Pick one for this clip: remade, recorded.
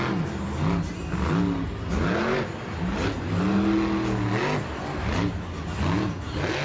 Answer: recorded